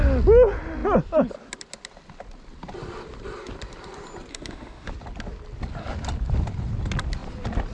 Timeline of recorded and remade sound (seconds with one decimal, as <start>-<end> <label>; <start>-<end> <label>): 0.0-4.3 recorded; 4.3-4.9 remade; 4.9-7.7 recorded